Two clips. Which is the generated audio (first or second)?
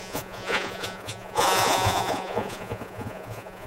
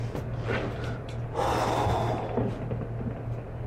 first